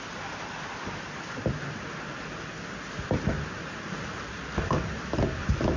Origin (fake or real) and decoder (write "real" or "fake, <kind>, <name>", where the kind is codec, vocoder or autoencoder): real